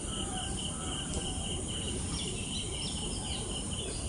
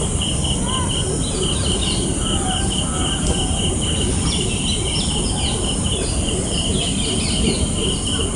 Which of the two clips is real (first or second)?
second